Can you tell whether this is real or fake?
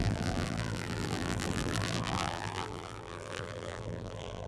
fake